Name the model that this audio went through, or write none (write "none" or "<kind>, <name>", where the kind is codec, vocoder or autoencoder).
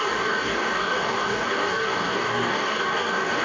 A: codec, DAC